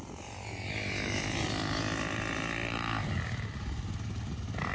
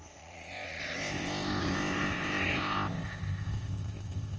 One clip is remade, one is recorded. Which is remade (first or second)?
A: second